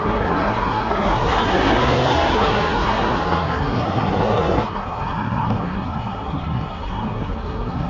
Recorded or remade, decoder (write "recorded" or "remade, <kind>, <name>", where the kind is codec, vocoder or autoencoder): remade, codec, SNAC